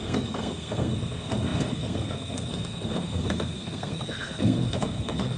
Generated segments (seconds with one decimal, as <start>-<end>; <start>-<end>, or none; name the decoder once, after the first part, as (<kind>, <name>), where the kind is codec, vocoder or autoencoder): 0.0-5.4 (codec, SNAC)